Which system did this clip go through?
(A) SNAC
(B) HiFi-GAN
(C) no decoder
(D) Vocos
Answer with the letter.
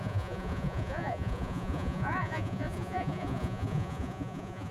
D